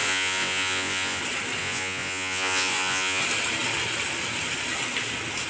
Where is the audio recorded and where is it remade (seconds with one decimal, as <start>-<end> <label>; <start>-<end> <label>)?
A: 0.0-1.2 remade; 1.2-1.6 recorded; 1.6-3.2 remade; 3.2-5.5 recorded